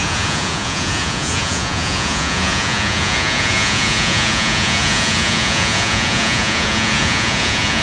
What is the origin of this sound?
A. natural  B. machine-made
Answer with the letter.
B